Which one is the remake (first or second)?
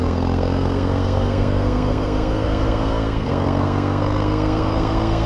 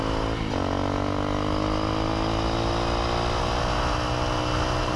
first